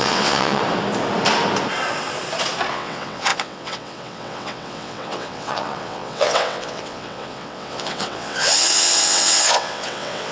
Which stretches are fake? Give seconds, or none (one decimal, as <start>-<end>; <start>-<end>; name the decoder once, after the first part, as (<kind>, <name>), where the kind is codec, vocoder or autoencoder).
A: 0.0-0.6 (vocoder, WaveNeXt); 2.7-10.3